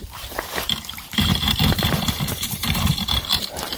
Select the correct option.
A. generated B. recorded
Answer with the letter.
A